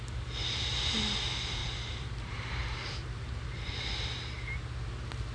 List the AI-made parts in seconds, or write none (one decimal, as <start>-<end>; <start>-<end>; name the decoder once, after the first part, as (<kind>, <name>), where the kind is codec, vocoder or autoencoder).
1.6-3.7 (vocoder, BigVGAN v2)